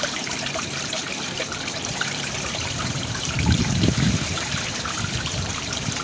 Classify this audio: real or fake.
fake